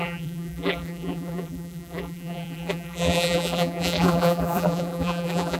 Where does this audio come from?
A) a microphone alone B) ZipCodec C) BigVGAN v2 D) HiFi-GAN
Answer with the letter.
C